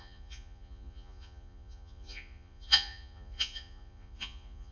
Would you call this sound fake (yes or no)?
yes